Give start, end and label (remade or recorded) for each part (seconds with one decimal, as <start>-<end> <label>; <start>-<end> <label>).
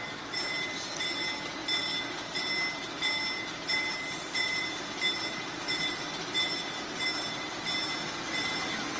0.0-9.0 recorded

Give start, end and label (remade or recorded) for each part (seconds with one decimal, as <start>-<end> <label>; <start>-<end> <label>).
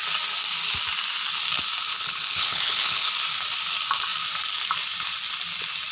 0.0-1.9 recorded; 1.9-3.1 remade; 3.1-5.9 recorded